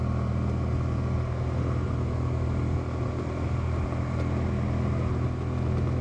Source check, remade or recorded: recorded